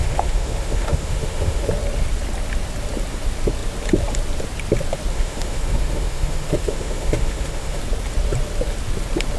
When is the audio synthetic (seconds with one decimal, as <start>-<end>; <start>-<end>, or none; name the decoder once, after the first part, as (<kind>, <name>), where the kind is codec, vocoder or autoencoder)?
0.0-1.7 (autoencoder, DAC-VAE); 5.1-7.8